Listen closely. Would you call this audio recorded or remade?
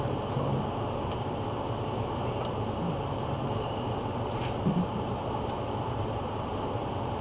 remade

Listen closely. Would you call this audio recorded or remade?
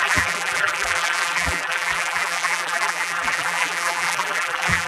remade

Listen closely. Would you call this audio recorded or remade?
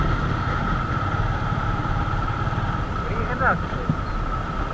remade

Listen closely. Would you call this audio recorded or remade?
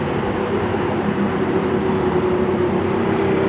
remade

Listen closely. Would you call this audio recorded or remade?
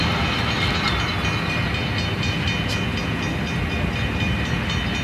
recorded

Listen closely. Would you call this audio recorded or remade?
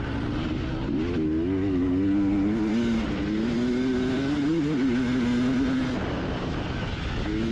recorded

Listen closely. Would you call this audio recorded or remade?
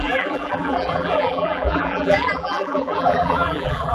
remade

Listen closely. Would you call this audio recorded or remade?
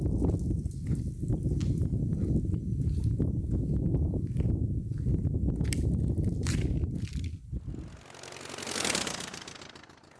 recorded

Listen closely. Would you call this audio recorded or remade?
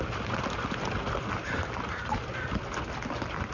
recorded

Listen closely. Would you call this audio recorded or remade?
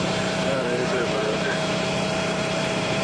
remade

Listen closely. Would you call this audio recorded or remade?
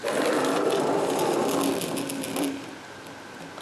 remade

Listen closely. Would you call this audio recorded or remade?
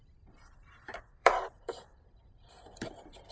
remade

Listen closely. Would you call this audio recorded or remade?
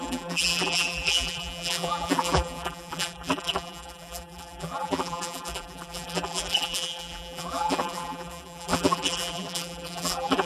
remade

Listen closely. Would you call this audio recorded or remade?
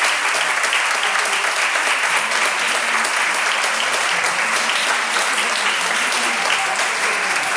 recorded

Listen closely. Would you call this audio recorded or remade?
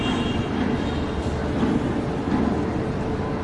recorded